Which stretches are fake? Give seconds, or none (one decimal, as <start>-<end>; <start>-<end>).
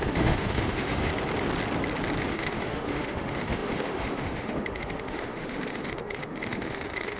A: 0.0-1.1; 2.3-7.2